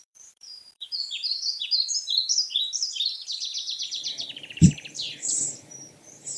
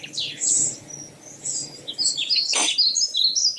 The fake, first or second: first